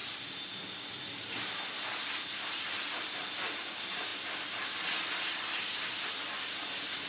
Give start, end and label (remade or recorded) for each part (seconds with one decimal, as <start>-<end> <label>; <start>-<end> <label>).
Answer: 0.0-7.1 recorded